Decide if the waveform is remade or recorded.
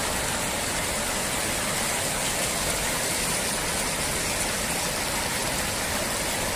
recorded